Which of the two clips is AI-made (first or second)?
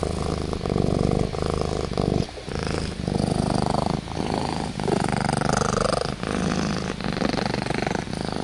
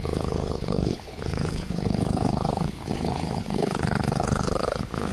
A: second